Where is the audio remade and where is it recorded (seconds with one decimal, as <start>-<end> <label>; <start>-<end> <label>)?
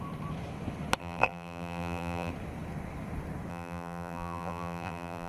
0.0-1.0 recorded; 1.0-2.3 remade; 2.3-3.5 recorded; 3.5-5.3 remade